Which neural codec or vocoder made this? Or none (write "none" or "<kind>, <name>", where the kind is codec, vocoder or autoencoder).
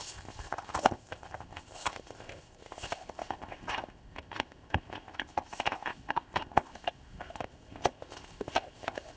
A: codec, ZipCodec